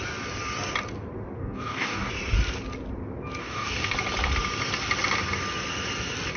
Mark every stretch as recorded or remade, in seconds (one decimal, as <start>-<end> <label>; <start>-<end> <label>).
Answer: 0.0-1.4 recorded; 1.4-2.1 remade; 2.1-3.4 recorded; 3.4-3.9 remade; 3.9-6.4 recorded